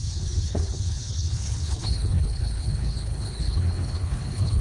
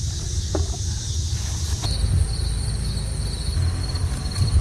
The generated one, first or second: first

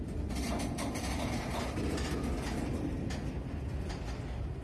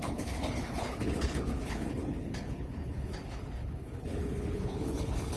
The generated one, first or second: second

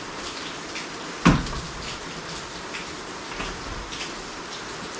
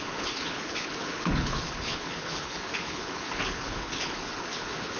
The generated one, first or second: second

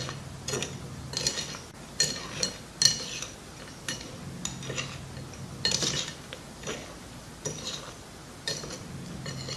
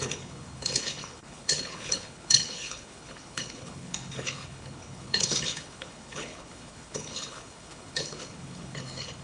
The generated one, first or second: second